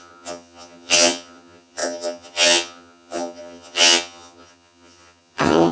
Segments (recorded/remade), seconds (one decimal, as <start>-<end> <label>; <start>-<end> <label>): 0.0-5.7 remade